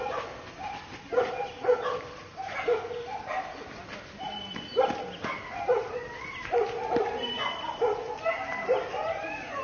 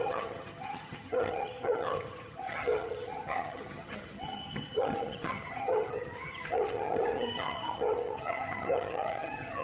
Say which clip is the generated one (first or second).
second